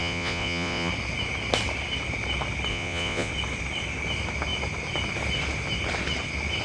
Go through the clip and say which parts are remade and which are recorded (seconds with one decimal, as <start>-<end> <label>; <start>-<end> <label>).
0.0-0.9 remade; 0.9-2.7 recorded; 2.7-3.3 remade; 3.3-6.6 recorded